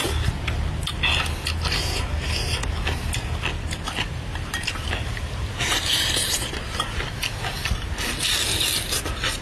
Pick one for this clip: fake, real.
real